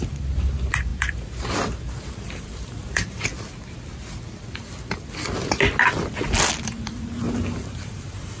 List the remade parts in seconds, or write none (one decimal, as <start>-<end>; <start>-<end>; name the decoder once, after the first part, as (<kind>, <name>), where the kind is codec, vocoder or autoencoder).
0.0-3.3 (vocoder, BigVGAN v2); 6.6-8.4